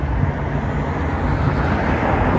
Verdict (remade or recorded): recorded